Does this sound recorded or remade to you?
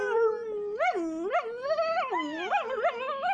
recorded